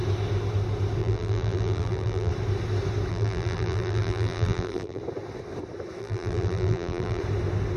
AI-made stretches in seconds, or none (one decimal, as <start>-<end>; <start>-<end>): 1.0-2.3; 3.1-5.0; 6.0-7.2